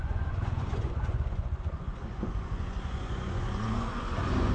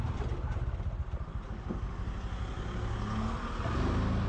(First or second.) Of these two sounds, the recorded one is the second